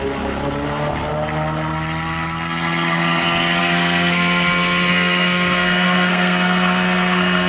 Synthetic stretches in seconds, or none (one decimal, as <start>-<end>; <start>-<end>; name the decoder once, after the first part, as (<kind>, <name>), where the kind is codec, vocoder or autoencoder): 3.6-7.5 (codec, SNAC)